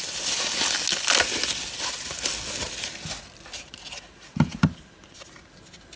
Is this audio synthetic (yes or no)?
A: no